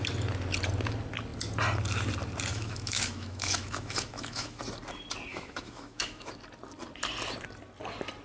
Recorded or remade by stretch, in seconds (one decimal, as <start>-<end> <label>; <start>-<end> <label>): 0.0-2.5 recorded; 2.5-4.6 remade; 4.6-5.3 recorded; 5.3-6.3 remade; 6.3-8.2 recorded